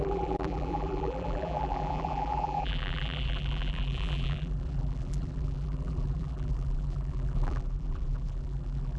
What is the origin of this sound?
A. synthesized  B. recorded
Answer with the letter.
A